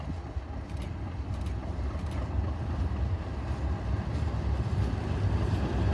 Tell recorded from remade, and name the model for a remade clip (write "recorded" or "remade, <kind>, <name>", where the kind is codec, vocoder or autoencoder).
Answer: recorded